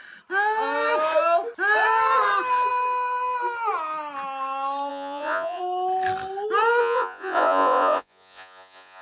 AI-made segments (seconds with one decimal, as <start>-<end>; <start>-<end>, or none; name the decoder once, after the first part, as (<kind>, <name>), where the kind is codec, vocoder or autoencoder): 4.9-5.6 (vocoder, Vocos); 6.8-9.0